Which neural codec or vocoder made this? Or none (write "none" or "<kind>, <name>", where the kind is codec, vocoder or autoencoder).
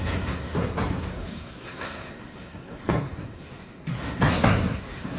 codec, SNAC